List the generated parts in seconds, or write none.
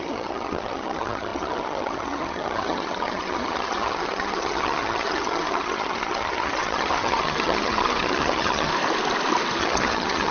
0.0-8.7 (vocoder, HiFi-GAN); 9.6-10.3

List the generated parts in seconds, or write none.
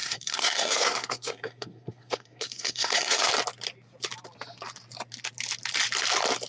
0.0-3.3 (codec, SNAC)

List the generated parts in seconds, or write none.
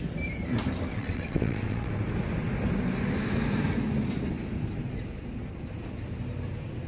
0.9-1.9 (vocoder, WaveNeXt)